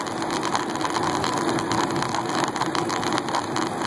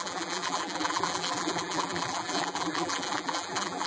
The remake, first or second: second